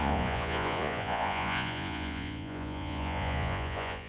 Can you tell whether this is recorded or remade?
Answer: remade